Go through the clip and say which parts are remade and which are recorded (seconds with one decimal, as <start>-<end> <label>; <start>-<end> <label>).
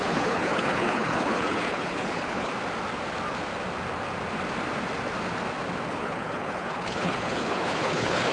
0.0-2.5 remade; 2.5-5.9 recorded; 5.9-8.3 remade